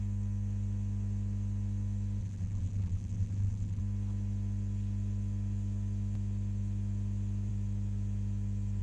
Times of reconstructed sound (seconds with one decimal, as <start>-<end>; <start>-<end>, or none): 2.2-3.8

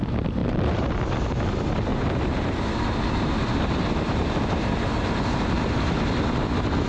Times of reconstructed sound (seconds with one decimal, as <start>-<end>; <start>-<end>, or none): 0.4-1.0; 1.9-6.0

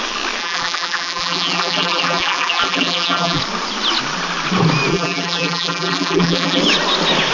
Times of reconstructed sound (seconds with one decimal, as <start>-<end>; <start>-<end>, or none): 0.4-3.4; 4.9-6.6

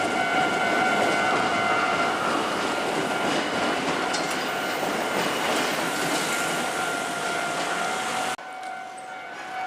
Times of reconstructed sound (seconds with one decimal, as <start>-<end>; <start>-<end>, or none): none

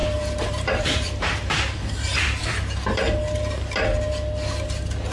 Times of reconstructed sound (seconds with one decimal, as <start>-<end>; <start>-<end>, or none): 0.0-3.1

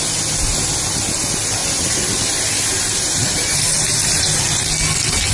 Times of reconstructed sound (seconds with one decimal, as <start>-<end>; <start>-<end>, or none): 1.6-4.4

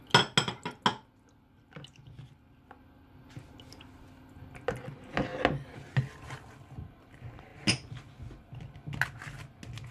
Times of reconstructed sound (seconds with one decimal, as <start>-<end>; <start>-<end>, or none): none